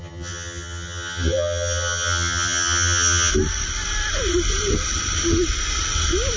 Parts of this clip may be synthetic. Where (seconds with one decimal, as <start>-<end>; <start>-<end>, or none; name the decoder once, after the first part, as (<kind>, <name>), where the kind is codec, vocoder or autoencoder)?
0.0-3.3 (vocoder, HiFi-GAN)